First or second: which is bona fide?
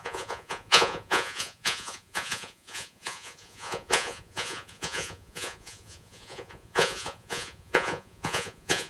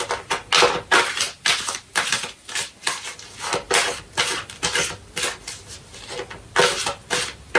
second